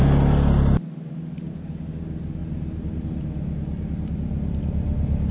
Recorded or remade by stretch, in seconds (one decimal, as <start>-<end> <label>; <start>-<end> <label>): 0.0-5.3 recorded